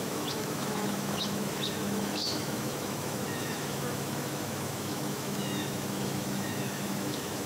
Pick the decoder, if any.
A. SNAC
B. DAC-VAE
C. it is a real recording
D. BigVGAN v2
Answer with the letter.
B